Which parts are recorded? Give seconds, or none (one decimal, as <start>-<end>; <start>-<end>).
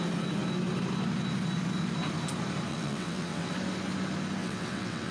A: 0.0-2.7; 3.5-4.4